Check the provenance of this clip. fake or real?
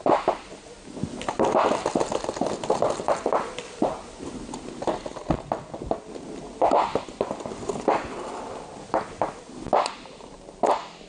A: real